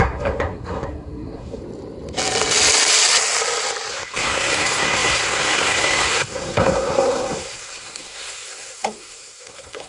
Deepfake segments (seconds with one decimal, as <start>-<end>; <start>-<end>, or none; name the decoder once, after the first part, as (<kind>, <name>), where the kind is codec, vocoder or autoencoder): 0.0-1.6 (codec, SNAC); 3.9-9.9